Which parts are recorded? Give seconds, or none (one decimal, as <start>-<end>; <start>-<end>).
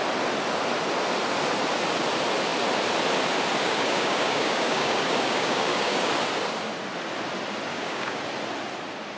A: 0.0-3.6; 6.1-7.7; 8.2-9.2